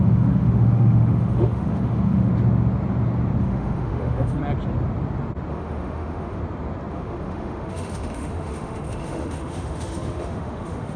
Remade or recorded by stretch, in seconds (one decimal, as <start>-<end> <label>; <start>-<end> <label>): 0.0-2.3 remade; 2.3-3.4 recorded; 3.4-4.4 remade; 4.4-5.5 recorded; 5.5-6.4 remade; 6.4-6.9 recorded; 6.9-11.0 remade